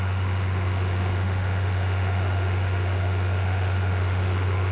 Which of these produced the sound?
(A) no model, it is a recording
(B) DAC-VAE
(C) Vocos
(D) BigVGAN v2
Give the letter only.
B